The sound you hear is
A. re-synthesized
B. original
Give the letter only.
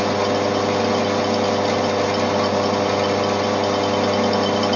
B